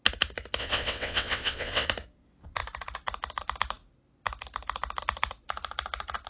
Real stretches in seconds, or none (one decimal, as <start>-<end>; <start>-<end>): 0.0-0.6; 1.9-6.3